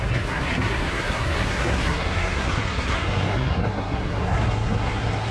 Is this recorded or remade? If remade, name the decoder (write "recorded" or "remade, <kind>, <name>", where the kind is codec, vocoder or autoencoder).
remade, codec, SNAC